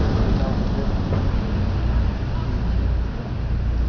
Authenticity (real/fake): real